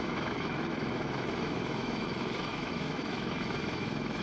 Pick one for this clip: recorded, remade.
remade